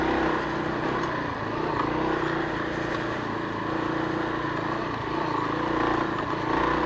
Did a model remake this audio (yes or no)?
no